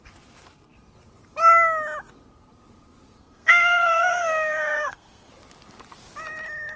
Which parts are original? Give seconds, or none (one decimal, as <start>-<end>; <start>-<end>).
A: 0.0-3.2; 5.3-6.8